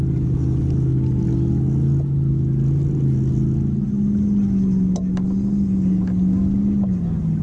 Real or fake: real